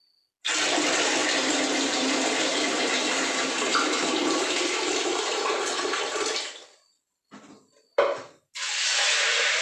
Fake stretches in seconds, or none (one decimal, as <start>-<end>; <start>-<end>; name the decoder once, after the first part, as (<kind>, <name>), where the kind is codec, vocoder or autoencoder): 1.2-6.0 (vocoder, BigVGAN v2); 7.9-9.6